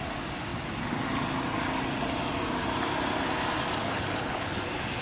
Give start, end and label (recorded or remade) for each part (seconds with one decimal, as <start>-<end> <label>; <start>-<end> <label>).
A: 0.0-3.8 recorded; 3.8-4.6 remade; 4.6-5.0 recorded